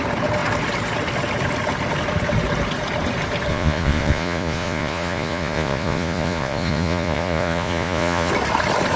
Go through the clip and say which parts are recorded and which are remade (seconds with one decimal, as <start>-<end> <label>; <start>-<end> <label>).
0.0-3.5 recorded; 3.5-8.3 remade; 8.3-9.0 recorded